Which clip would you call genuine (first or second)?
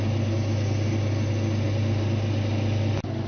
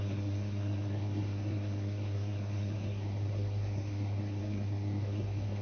first